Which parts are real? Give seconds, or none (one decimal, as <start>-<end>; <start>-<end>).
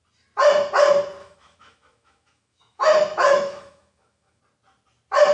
0.0-1.2; 4.4-5.3